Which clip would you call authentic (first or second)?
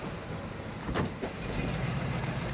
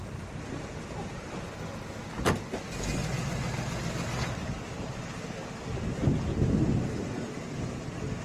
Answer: second